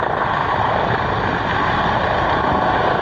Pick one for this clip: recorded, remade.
recorded